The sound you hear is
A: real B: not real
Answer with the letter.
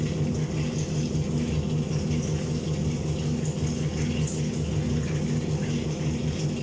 A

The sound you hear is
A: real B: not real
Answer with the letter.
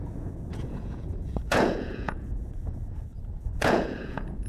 B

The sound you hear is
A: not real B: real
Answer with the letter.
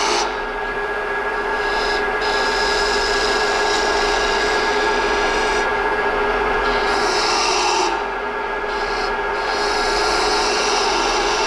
A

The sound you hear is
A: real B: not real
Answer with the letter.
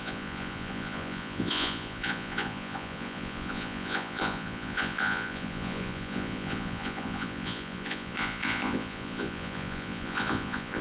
B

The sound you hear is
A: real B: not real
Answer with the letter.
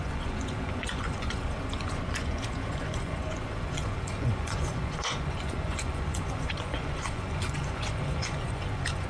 B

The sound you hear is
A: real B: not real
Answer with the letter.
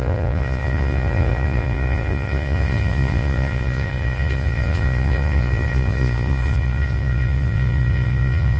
B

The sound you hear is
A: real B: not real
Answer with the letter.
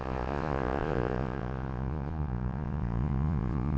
B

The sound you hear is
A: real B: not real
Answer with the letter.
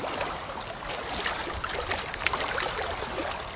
A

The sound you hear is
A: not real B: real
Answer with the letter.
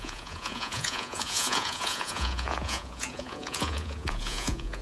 A